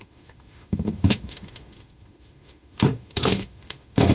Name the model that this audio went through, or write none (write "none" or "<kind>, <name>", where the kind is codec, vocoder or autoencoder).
autoencoder, DAC-VAE